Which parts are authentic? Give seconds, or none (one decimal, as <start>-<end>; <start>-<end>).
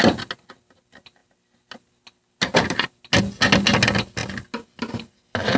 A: 0.0-5.6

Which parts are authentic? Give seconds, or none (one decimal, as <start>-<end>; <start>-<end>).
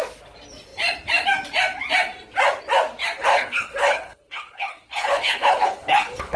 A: 0.0-3.2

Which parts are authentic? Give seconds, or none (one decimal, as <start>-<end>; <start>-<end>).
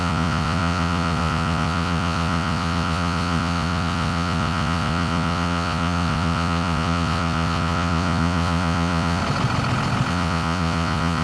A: 9.2-10.1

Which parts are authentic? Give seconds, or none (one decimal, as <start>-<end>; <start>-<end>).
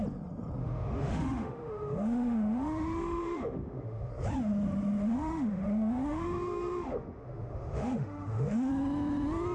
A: 0.0-0.6; 4.1-5.0; 8.7-9.5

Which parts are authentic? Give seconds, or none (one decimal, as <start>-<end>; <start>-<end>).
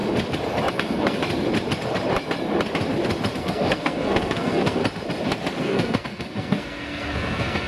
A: 0.0-0.7; 1.2-3.4; 4.8-5.6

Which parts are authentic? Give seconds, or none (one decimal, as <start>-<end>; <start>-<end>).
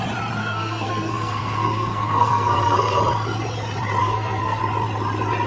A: 0.0-0.4; 3.0-4.0; 4.6-5.5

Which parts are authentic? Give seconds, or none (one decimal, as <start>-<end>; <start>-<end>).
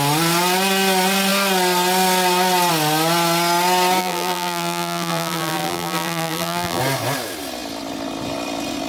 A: 0.0-4.0; 6.8-8.9